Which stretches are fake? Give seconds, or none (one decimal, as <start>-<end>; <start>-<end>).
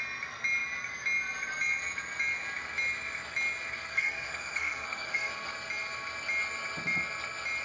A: 3.9-5.3